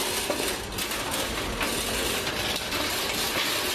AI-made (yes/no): no